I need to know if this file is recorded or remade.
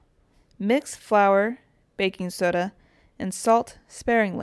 recorded